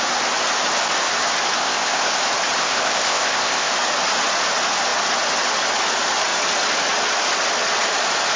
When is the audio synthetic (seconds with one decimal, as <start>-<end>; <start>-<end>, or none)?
1.6-2.2; 2.6-3.7